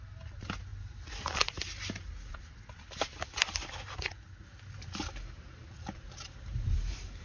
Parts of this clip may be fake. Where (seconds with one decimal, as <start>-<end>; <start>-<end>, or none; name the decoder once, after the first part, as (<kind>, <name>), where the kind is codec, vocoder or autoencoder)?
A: none